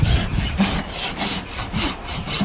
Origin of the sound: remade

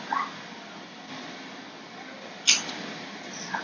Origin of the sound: recorded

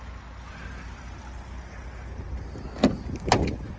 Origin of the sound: recorded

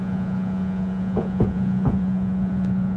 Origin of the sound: remade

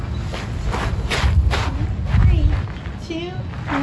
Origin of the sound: recorded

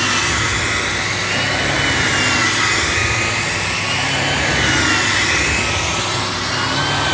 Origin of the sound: recorded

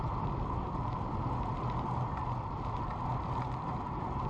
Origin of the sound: recorded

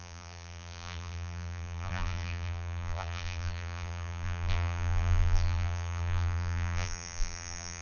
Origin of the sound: remade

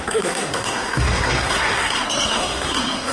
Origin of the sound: remade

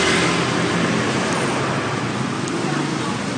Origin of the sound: recorded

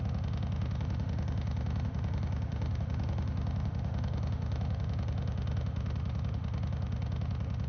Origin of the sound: remade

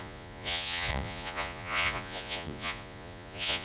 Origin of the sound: remade